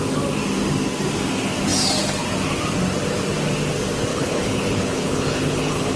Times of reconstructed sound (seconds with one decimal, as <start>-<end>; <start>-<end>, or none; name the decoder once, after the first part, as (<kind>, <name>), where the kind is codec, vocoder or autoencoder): 4.1-6.0 (codec, HILCodec)